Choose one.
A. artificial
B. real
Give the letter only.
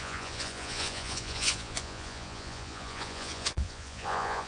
A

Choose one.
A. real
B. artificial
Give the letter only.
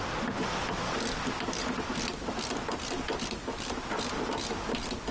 A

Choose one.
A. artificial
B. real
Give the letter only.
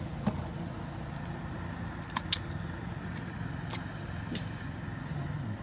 B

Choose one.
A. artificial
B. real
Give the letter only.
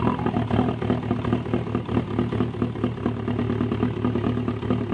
B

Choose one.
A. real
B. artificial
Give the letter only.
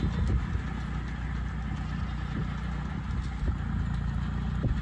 A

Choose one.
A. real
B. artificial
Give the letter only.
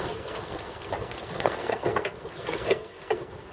B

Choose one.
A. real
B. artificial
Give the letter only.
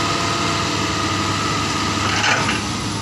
A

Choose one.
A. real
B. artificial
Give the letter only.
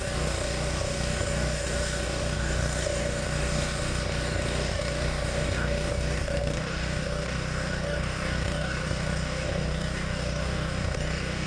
B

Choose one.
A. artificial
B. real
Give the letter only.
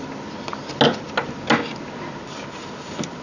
B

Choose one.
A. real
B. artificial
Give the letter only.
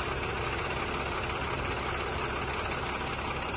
A